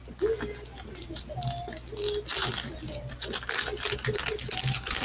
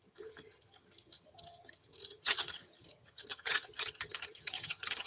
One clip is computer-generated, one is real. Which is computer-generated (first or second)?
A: second